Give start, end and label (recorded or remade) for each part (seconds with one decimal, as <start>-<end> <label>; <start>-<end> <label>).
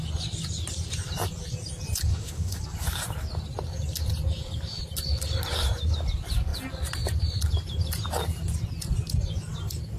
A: 0.0-2.1 recorded; 2.1-2.6 remade; 2.6-10.0 recorded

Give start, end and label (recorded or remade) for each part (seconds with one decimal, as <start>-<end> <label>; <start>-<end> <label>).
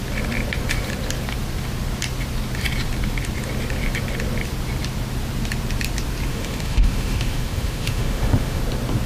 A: 0.0-6.3 recorded; 6.3-8.6 remade; 8.6-9.1 recorded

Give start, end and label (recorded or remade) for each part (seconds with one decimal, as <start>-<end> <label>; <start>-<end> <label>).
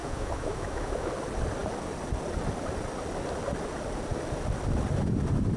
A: 0.0-1.1 remade; 1.1-5.6 recorded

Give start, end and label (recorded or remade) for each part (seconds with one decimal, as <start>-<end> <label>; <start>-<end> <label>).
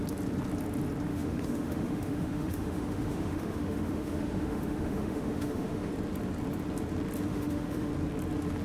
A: 0.0-1.1 recorded; 1.1-5.9 remade; 5.9-7.3 recorded; 7.3-7.9 remade; 7.9-8.6 recorded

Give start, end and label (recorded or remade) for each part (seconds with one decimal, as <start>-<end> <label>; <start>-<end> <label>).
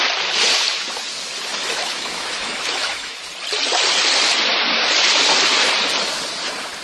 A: 0.0-1.5 recorded; 1.5-3.2 remade; 3.2-6.8 recorded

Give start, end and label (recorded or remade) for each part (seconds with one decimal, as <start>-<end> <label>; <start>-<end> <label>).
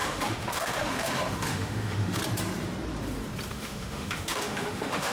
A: 0.0-2.2 remade; 2.2-3.5 recorded; 3.5-5.1 remade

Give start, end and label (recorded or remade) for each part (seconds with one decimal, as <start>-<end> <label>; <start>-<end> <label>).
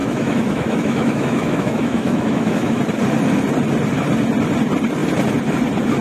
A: 0.0-2.8 remade; 2.8-6.0 recorded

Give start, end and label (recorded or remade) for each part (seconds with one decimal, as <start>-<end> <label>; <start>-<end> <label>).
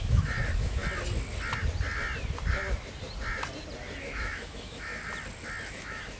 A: 0.0-0.8 remade; 0.8-4.0 recorded; 4.0-4.9 remade; 4.9-5.7 recorded; 5.7-6.2 remade